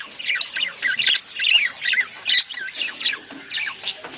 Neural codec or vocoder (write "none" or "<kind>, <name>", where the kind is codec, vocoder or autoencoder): none